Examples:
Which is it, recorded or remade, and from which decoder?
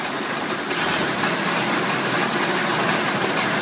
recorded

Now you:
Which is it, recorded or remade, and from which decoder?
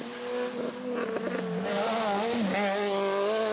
recorded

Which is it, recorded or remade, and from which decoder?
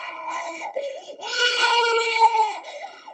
remade, codec, HILCodec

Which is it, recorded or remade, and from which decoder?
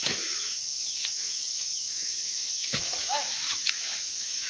remade, autoencoder, DAC-VAE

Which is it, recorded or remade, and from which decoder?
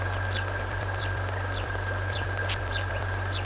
remade, vocoder, BigVGAN v2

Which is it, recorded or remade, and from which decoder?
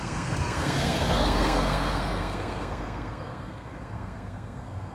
remade, codec, SNAC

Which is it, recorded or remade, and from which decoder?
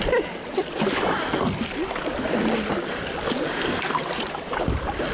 recorded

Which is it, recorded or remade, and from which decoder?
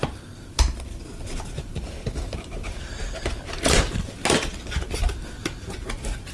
recorded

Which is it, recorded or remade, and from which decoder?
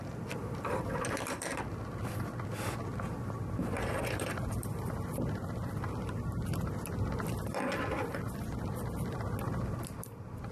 remade, vocoder, BigVGAN v2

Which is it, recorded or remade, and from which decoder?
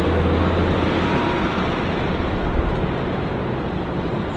recorded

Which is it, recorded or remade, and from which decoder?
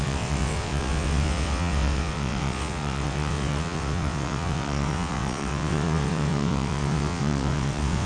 remade, vocoder, WaveNeXt